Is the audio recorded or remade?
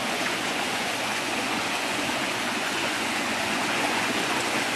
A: remade